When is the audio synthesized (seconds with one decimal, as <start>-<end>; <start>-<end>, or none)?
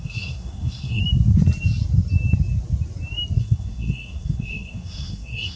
0.0-1.0; 3.4-5.6